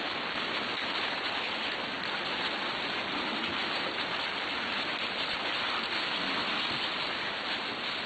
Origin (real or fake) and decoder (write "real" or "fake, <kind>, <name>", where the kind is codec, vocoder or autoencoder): real